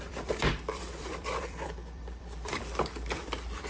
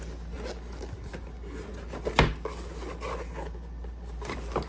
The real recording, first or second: second